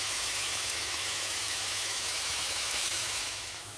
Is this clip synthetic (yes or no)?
yes